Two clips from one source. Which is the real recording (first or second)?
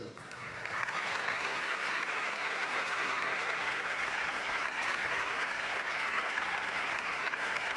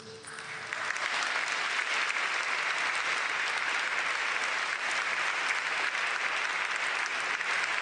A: second